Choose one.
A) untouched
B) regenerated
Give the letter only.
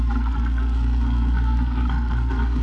B